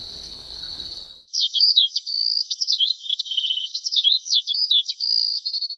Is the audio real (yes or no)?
no